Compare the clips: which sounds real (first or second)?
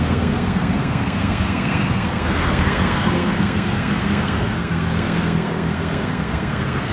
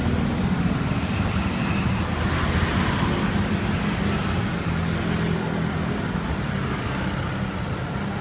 second